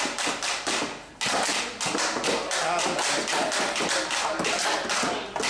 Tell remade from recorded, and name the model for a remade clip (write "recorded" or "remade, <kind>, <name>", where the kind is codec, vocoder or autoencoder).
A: recorded